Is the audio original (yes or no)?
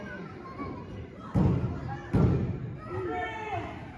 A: yes